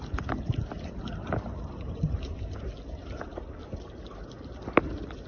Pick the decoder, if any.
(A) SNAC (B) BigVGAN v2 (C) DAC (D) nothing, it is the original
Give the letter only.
D